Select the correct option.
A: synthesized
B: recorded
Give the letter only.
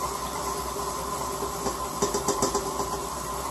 B